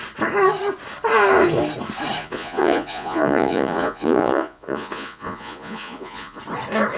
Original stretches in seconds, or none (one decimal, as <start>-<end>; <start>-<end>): 0.0-2.2; 6.4-7.0